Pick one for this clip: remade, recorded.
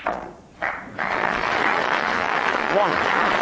remade